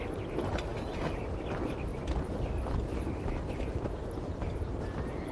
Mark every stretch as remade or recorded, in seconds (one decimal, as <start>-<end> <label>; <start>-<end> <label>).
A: 0.0-0.7 recorded; 0.7-1.2 remade; 1.2-5.3 recorded